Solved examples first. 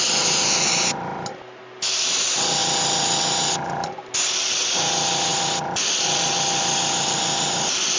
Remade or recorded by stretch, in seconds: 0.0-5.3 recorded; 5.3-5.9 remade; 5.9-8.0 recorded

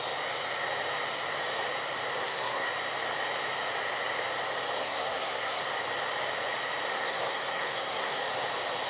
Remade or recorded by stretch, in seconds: 0.0-2.2 recorded; 2.2-2.7 remade; 2.7-4.8 recorded; 4.8-5.6 remade; 5.6-6.9 recorded; 6.9-8.2 remade; 8.2-8.9 recorded

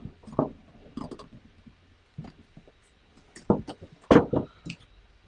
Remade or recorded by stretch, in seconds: 0.0-5.3 recorded

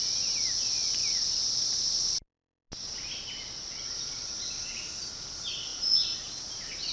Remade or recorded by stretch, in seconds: 0.0-6.9 recorded

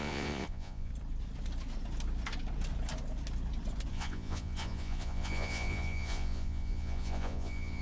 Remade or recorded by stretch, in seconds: 0.0-0.9 remade; 0.9-3.9 recorded; 3.9-7.8 remade

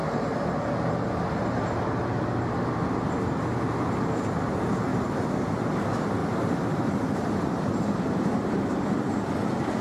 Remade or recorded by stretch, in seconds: 0.0-0.5 remade; 0.5-4.9 recorded; 4.9-5.5 remade; 5.5-6.2 recorded; 6.2-8.8 remade; 8.8-9.8 recorded

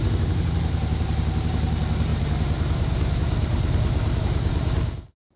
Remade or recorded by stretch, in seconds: 0.0-5.4 remade

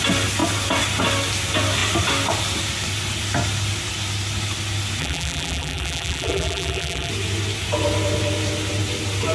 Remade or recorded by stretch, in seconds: 0.0-5.0 recorded; 5.0-7.1 remade; 7.1-9.3 recorded